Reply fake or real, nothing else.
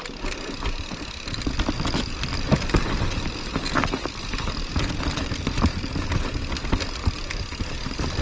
real